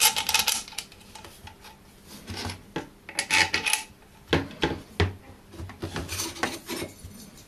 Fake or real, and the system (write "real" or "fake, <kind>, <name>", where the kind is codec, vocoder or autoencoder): real